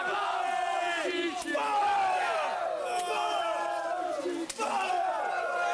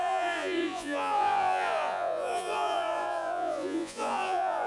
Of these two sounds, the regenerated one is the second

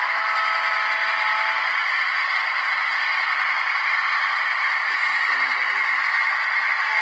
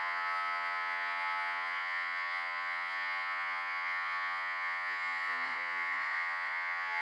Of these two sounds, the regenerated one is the second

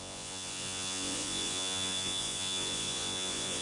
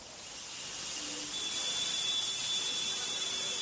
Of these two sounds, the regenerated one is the first